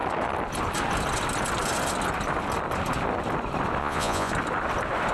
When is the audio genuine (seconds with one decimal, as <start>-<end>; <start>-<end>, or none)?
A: 0.0-3.8; 4.3-5.1

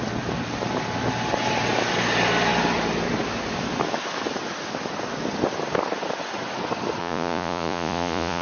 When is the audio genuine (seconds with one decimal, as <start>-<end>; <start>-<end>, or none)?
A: 0.0-7.0

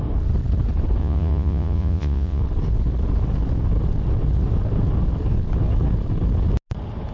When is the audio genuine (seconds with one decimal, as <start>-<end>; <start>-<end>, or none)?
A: 0.0-1.0; 2.4-7.1

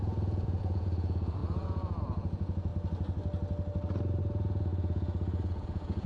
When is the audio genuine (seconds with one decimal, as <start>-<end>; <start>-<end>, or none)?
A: 2.7-4.2

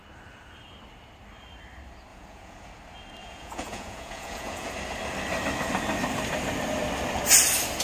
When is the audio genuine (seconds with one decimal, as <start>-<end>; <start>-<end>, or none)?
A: 0.0-2.1; 2.7-3.2; 4.7-7.8

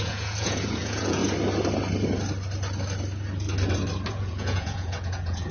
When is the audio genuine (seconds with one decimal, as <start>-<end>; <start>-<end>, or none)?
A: 1.2-4.1

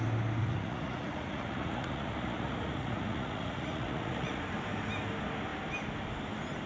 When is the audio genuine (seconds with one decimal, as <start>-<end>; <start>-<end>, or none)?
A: 0.0-0.4; 4.4-6.7